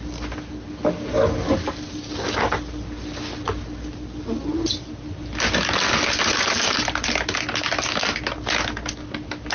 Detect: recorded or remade recorded